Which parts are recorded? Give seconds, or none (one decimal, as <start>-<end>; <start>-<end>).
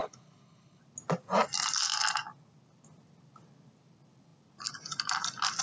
0.8-5.6